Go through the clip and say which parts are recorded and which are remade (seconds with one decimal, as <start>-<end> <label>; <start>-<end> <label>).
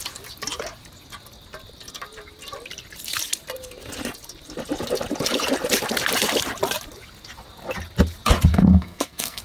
0.0-8.5 recorded; 8.5-9.4 remade